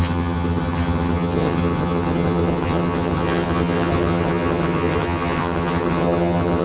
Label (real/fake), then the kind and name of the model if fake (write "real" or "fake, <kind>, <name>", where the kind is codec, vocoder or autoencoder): fake, vocoder, HiFi-GAN